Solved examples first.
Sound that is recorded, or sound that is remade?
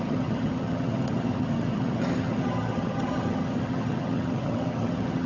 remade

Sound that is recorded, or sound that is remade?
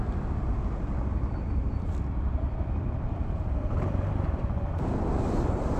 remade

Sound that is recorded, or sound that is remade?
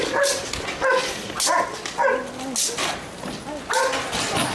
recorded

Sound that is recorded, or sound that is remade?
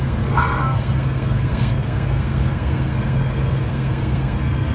remade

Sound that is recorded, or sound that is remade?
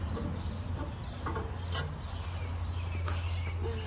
recorded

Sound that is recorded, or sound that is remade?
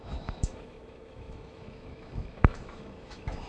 remade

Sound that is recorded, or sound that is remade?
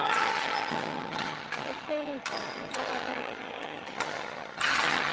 remade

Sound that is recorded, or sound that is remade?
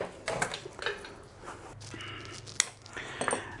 recorded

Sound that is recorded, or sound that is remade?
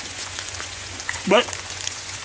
remade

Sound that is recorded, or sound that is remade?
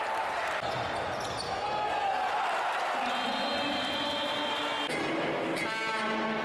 recorded